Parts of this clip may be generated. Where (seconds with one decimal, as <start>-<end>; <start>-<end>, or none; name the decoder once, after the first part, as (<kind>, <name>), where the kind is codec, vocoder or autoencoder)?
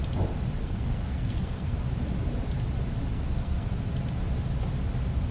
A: 0.6-1.8 (codec, SNAC); 3.1-3.7